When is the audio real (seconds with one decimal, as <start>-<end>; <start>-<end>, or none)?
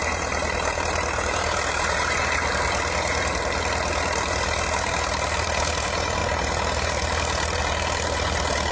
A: none